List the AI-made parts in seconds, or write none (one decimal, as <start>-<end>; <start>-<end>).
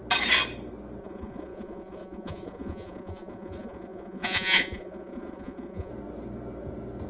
1.0-5.9